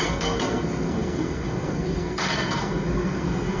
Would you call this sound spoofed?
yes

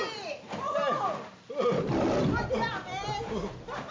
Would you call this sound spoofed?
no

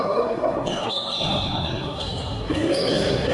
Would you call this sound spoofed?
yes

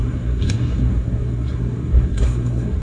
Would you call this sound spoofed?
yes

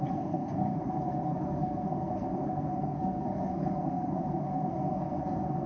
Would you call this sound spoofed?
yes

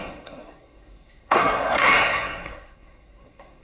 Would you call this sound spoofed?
yes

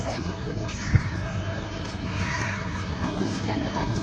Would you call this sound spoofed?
yes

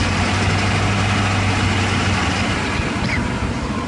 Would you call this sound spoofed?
no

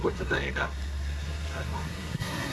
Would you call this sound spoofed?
yes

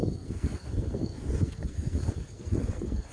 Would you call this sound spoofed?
yes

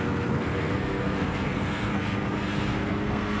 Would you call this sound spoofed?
yes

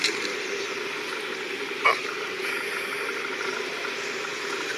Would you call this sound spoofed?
no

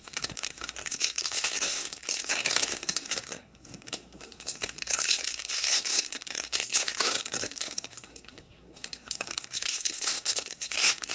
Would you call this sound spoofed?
yes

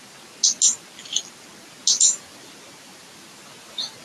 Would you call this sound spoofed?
no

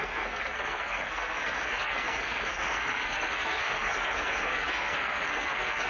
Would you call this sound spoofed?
yes